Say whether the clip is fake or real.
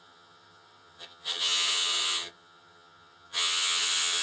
fake